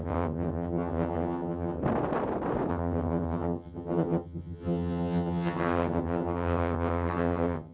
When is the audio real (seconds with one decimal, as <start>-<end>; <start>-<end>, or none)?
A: 1.8-2.7